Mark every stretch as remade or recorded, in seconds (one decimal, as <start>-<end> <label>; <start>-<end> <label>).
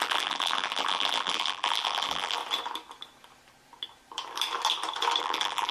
0.0-2.4 remade; 2.4-5.2 recorded; 5.2-5.7 remade